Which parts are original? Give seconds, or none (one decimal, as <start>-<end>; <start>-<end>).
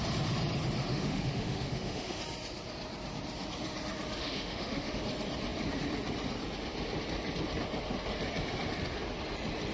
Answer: 0.0-0.9; 2.2-4.2; 5.0-9.7